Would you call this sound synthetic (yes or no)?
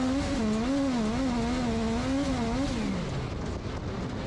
no